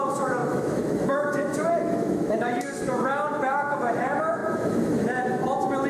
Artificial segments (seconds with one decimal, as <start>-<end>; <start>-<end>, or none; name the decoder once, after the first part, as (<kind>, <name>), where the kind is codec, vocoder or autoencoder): 0.0-5.4 (autoencoder, DAC-VAE)